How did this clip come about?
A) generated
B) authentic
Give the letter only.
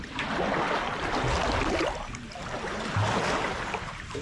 B